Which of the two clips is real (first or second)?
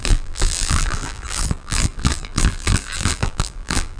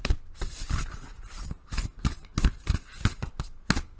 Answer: second